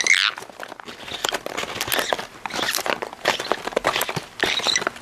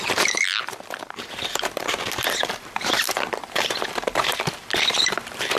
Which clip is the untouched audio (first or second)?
first